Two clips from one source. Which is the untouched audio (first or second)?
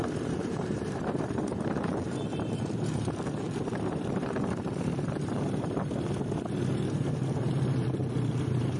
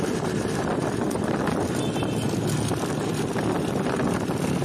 second